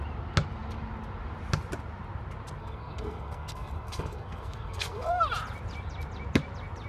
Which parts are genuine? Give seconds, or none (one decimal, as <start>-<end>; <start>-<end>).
0.0-2.6; 5.2-6.9